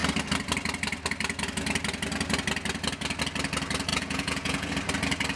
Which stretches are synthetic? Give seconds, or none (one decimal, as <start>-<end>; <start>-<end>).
3.9-4.7